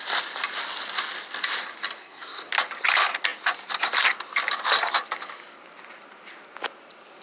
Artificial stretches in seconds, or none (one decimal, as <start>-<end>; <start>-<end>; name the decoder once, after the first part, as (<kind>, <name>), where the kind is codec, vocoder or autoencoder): 2.0-2.5 (codec, SNAC)